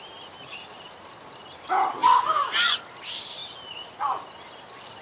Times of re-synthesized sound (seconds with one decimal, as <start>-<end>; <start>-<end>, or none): 2.0-2.8